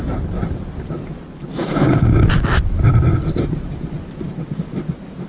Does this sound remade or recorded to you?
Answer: recorded